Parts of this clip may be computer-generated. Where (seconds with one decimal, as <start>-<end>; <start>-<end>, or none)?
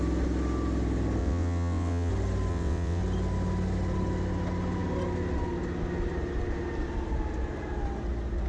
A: 1.2-2.1; 2.5-3.0